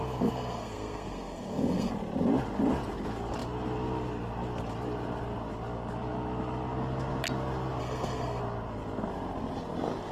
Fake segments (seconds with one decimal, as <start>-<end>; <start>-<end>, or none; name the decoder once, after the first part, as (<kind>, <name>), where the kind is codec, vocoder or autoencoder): 0.0-1.9 (codec, SNAC); 7.8-8.4